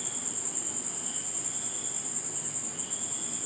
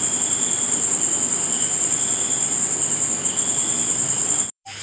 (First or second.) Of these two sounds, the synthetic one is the second